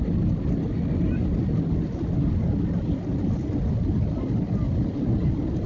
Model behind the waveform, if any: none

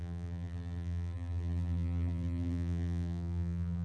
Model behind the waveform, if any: vocoder, BigVGAN v2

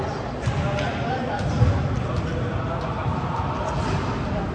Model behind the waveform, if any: none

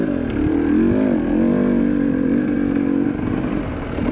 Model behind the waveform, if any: none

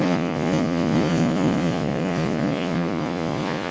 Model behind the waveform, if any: vocoder, Vocos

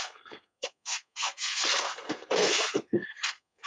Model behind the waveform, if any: codec, SNAC